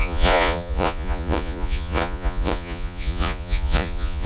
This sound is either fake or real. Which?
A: fake